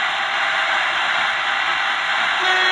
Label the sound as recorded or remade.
recorded